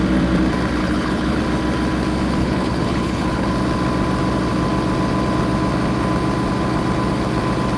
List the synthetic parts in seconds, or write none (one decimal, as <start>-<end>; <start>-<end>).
0.8-1.4; 2.4-3.5